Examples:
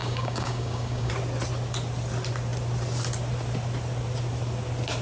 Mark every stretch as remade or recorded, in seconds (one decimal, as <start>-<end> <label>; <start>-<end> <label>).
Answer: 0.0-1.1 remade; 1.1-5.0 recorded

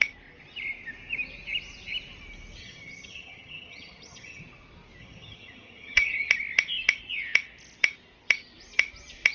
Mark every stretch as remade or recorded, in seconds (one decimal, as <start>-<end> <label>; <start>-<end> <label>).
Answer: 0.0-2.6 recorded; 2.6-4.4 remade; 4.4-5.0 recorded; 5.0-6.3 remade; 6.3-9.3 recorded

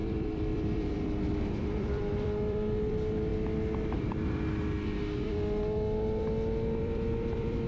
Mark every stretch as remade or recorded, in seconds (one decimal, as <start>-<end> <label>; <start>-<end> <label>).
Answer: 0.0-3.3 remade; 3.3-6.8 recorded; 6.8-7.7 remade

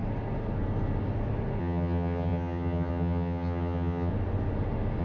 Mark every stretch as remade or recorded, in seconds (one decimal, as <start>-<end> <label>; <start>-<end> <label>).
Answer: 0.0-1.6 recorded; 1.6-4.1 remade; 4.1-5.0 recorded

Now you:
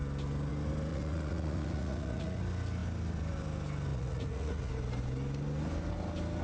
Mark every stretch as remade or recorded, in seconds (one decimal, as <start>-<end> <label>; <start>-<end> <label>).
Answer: 0.0-0.9 recorded; 0.9-2.4 remade; 2.4-3.9 recorded; 3.9-4.7 remade; 4.7-6.4 recorded

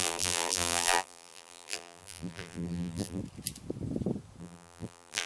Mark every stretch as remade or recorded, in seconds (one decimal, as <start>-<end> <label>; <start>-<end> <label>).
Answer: 0.0-3.2 remade; 3.2-4.4 recorded; 4.4-5.3 remade